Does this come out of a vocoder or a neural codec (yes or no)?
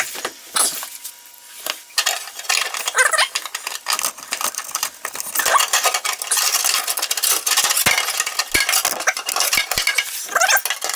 no